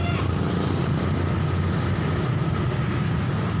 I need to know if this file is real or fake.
real